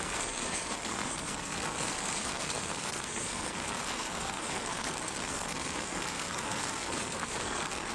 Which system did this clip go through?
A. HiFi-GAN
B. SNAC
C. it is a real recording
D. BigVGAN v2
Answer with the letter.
B